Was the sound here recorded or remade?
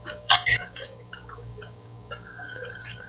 remade